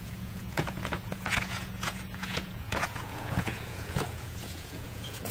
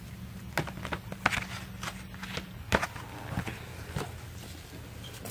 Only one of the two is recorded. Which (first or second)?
second